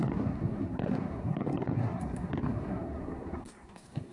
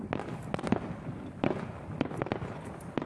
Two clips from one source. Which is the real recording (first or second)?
second